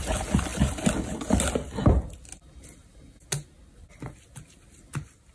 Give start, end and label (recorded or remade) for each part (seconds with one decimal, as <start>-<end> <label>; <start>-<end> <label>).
0.0-5.3 recorded